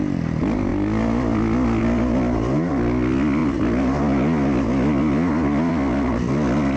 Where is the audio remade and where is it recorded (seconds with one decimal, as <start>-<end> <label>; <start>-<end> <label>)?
0.0-6.8 recorded